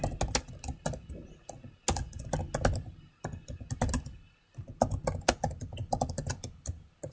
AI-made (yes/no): no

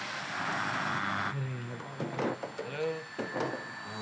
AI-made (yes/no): no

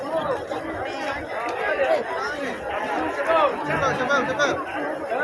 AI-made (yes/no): no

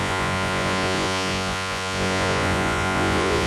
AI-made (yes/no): yes